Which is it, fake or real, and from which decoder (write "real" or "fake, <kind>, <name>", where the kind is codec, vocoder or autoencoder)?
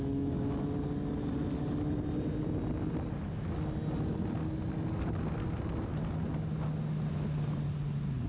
real